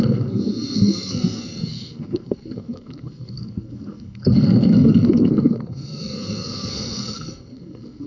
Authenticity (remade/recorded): remade